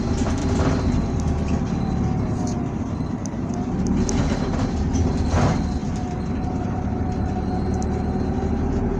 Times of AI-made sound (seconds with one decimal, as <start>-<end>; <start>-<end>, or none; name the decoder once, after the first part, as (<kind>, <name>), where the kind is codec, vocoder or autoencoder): 0.4-3.8 (vocoder, BigVGAN v2); 5.8-6.3